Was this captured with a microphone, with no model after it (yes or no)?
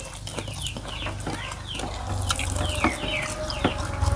yes